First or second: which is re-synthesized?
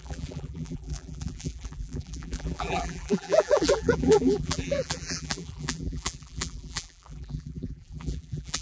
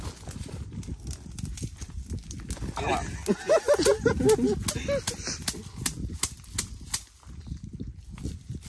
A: first